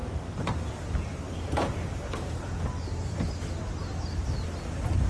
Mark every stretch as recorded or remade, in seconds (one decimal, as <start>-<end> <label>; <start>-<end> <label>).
0.0-2.6 remade; 2.6-5.1 recorded